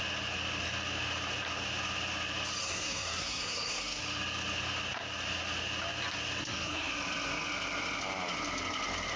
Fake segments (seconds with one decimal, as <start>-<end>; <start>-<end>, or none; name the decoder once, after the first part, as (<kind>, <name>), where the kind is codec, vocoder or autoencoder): 2.6-4.0 (codec, SNAC); 6.4-6.9